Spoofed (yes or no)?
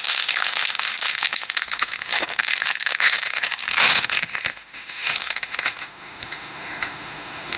yes